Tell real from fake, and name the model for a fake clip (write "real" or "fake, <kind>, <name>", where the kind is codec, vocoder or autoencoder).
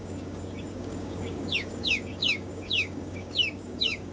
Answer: fake, codec, DAC